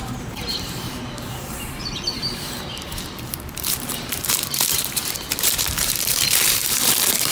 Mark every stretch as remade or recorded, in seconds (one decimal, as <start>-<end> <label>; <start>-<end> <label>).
0.0-7.3 remade